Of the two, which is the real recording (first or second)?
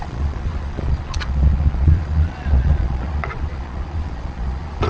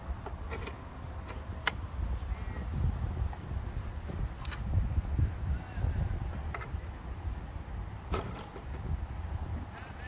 second